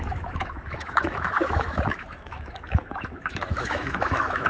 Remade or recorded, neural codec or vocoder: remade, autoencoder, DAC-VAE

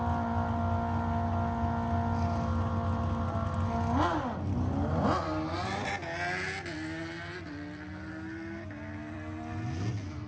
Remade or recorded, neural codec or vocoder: recorded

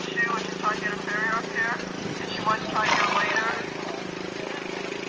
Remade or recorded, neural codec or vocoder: recorded